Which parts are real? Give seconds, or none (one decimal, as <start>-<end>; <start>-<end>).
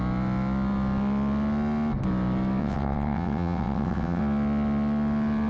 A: 0.0-2.6; 4.2-5.5